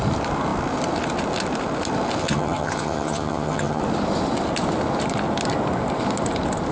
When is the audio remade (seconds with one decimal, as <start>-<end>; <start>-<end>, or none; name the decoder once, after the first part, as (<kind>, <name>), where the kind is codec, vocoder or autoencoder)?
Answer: 2.2-3.8 (vocoder, HiFi-GAN)